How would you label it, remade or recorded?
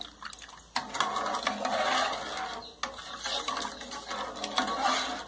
recorded